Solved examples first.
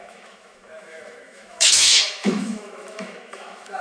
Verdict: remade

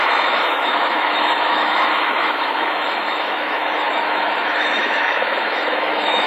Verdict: remade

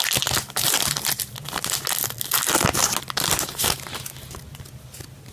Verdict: recorded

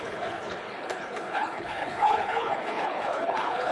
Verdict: remade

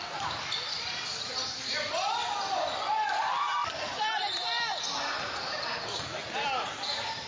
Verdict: remade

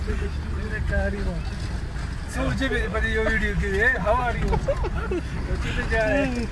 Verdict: recorded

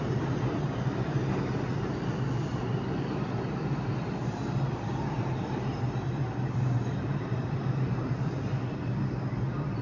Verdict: remade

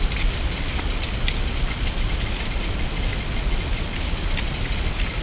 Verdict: recorded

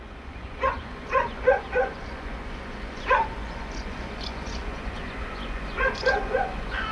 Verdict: remade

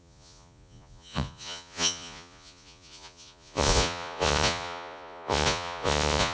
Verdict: remade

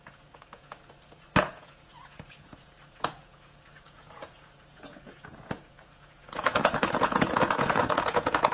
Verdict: remade